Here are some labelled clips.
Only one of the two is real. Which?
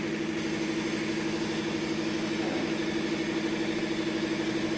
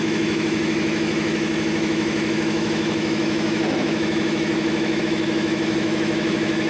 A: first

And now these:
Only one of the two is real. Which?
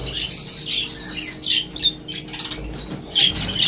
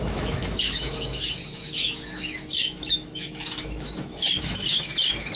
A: first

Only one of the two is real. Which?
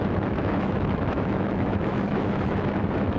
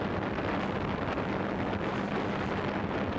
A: second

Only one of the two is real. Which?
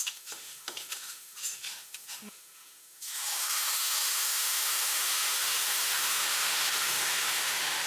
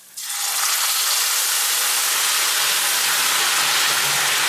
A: second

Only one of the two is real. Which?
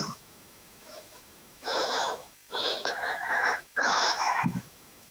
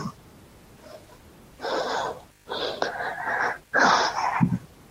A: second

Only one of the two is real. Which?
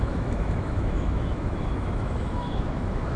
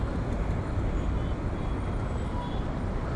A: second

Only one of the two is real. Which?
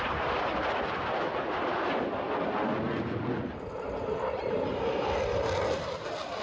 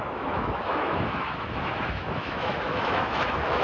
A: first